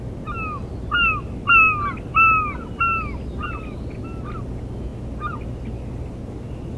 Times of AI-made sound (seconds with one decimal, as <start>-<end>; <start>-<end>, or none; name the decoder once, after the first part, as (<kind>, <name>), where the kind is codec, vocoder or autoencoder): none